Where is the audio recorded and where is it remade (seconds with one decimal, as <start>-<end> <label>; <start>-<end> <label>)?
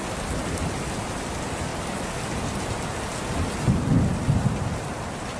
0.0-5.4 recorded